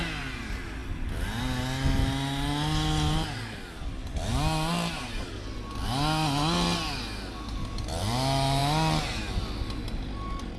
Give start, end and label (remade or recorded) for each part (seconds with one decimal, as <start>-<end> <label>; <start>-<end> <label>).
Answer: 0.0-10.6 recorded